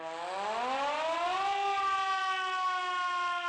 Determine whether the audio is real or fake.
real